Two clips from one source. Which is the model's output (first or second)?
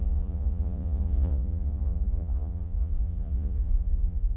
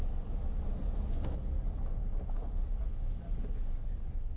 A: first